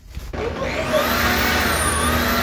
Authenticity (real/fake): real